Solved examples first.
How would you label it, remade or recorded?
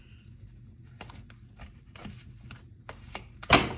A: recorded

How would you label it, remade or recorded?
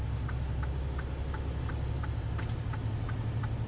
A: recorded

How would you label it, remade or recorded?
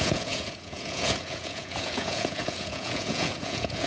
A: remade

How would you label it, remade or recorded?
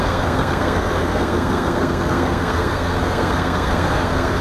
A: remade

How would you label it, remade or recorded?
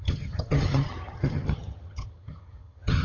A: remade